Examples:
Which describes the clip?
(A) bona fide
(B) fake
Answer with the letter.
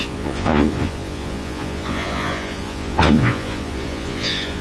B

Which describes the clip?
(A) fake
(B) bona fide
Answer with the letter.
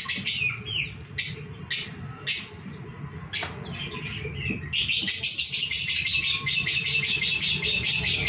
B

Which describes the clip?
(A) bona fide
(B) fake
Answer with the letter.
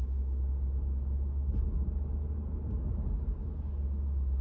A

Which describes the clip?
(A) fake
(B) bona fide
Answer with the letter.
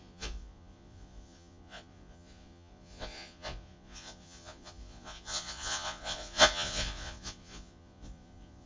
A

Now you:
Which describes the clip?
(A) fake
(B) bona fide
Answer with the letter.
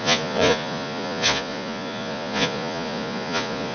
A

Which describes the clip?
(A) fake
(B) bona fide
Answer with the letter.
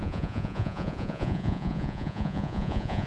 A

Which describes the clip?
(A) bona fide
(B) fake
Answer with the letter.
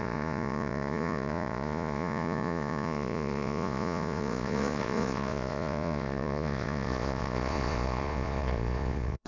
B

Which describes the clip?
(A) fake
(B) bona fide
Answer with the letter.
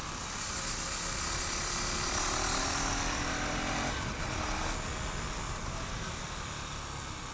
B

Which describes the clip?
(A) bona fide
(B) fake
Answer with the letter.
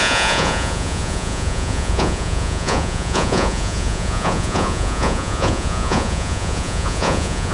B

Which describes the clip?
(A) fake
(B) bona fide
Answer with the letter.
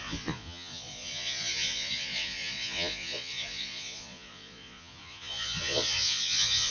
A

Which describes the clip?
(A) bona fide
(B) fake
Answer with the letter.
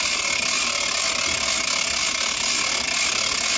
A